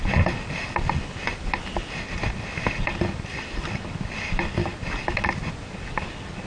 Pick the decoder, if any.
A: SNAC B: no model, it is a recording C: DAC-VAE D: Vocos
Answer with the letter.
B